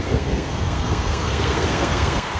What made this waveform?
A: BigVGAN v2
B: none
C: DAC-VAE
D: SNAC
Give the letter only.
D